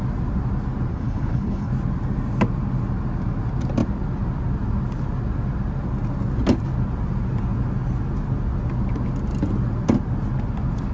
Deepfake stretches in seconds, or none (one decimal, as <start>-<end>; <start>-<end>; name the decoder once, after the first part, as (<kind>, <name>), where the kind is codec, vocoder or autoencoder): 0.9-1.7 (codec, HILCodec)